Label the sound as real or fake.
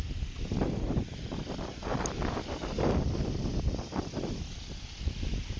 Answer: real